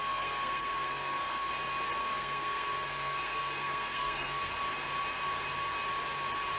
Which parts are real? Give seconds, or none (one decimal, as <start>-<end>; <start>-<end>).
1.5-2.0; 4.5-6.6